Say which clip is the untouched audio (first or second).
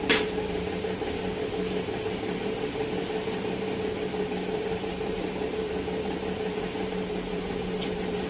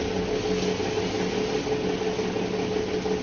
second